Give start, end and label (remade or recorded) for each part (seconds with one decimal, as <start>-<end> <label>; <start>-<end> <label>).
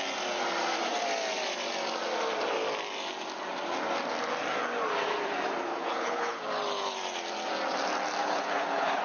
0.0-5.7 recorded; 5.7-6.4 remade; 6.4-8.2 recorded; 8.2-9.0 remade